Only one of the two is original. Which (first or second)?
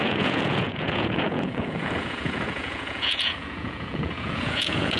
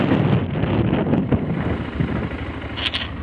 second